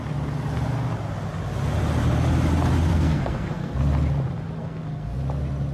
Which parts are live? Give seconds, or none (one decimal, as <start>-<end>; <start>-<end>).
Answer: 0.0-2.9; 3.8-4.6; 5.2-5.7